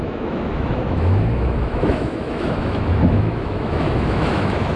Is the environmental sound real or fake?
fake